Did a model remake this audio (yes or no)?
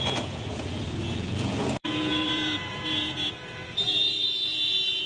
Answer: yes